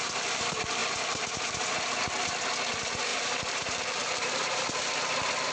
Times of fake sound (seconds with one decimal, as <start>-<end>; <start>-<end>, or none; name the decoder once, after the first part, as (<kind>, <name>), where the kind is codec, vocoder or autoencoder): 3.1-4.8 (vocoder, BigVGAN v2)